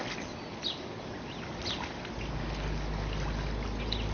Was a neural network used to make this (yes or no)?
no